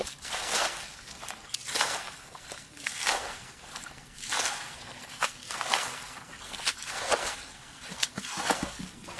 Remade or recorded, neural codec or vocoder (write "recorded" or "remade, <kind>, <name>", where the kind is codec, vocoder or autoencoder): remade, codec, SNAC